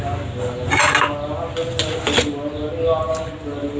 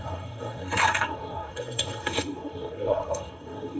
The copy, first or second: second